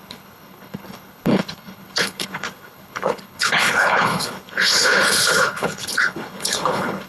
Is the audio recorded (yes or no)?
no